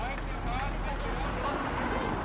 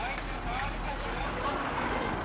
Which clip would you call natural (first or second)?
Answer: first